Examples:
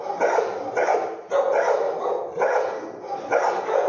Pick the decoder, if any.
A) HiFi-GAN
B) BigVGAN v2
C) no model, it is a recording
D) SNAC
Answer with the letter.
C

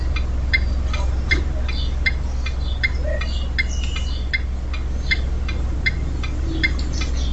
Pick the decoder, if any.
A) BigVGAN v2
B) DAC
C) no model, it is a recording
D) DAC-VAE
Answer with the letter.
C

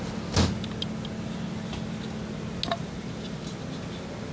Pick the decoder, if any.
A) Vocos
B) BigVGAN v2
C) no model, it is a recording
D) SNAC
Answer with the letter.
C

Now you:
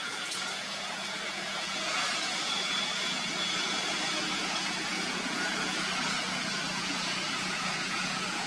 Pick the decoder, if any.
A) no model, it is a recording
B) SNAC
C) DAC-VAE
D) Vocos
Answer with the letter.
D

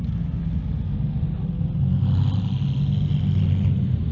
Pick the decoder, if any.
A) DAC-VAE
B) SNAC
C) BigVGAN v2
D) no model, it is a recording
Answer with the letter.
D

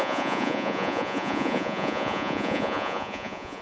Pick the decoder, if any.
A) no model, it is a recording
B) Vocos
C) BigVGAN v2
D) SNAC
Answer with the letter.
B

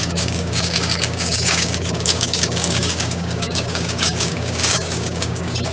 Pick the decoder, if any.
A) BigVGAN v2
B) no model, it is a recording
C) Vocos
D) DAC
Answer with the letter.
D